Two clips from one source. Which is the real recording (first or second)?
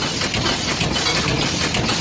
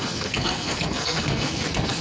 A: first